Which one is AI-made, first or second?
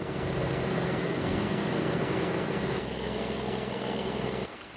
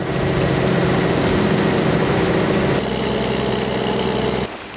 first